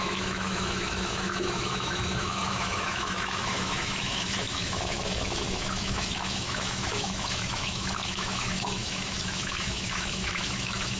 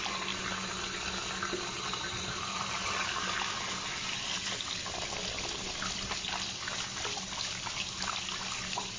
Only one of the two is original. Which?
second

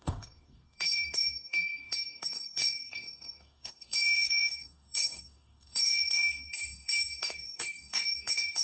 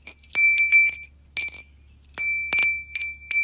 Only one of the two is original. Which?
second